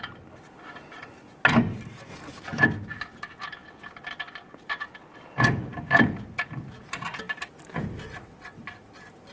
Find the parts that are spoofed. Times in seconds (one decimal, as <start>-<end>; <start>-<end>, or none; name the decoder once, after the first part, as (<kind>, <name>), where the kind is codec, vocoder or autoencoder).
none